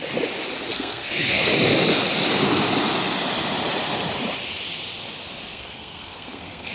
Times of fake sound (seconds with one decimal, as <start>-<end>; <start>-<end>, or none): 0.7-1.5; 5.5-6.7